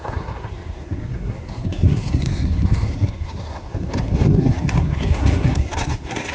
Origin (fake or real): fake